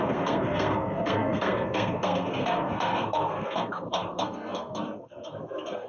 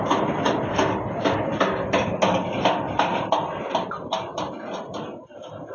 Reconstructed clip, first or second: first